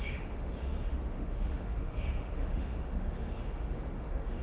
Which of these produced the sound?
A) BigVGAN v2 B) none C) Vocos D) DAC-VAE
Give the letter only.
D